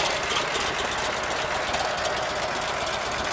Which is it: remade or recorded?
recorded